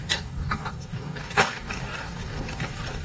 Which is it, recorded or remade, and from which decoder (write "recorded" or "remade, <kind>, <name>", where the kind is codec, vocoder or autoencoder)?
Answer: remade, codec, DAC